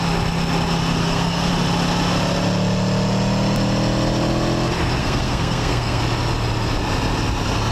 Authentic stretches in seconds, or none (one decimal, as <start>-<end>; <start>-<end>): 0.0-1.0; 1.5-5.0; 6.0-7.7